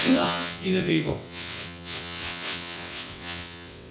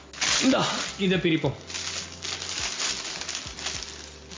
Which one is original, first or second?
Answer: second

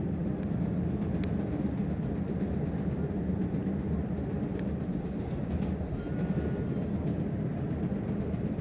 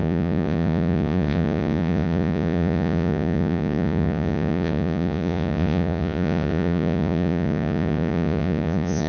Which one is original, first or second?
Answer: first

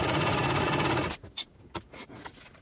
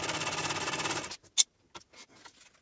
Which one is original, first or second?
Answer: second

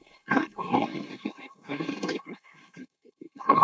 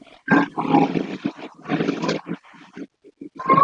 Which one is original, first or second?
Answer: second